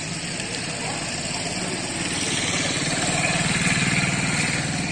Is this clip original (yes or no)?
yes